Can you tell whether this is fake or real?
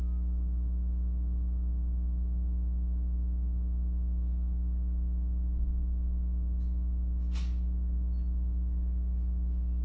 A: real